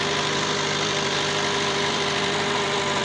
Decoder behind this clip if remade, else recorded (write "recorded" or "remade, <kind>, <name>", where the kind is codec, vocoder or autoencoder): remade, vocoder, BigVGAN v2